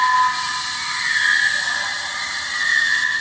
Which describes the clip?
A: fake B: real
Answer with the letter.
B